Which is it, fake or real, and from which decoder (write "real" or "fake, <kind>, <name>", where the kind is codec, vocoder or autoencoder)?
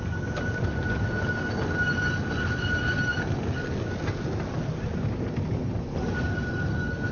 real